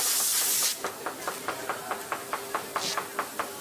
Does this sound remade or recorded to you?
recorded